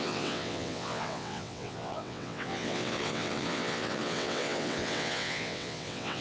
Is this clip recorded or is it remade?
remade